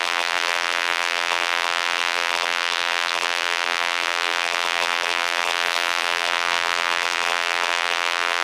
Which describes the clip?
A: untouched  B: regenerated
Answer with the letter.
B